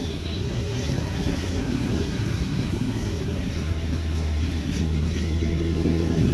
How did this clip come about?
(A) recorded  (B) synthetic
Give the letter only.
B